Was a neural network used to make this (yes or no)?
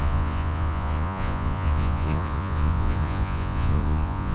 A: yes